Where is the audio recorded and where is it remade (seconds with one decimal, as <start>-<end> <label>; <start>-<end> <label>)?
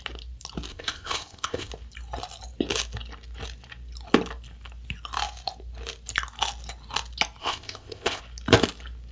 0.0-0.7 recorded; 0.7-1.7 remade; 1.7-7.4 recorded; 7.4-8.2 remade; 8.2-9.1 recorded